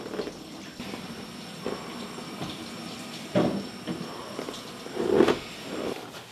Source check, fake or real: real